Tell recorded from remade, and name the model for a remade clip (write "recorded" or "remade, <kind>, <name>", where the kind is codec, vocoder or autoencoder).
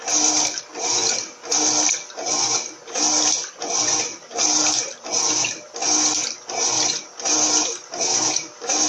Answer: recorded